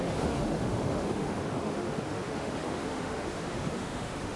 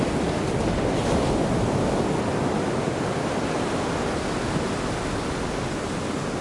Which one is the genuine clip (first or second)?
second